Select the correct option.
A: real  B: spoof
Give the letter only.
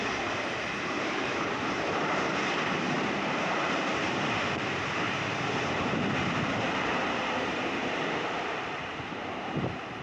B